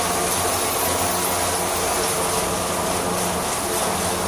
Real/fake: real